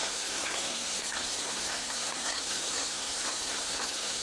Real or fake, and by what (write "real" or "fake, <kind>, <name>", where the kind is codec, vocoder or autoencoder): fake, codec, SNAC